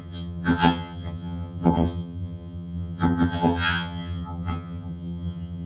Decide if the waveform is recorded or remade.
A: remade